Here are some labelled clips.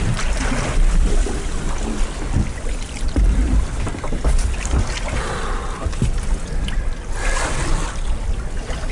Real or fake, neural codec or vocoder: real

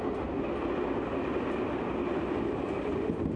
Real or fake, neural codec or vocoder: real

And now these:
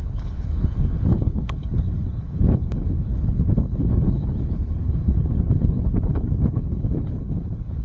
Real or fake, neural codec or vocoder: fake, codec, HILCodec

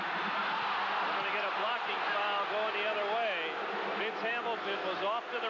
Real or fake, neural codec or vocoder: real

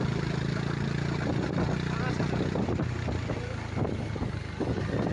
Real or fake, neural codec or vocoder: real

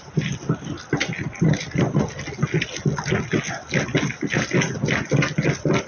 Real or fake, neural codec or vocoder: real